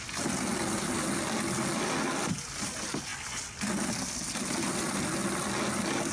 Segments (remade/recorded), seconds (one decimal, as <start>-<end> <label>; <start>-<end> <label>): 0.0-6.1 recorded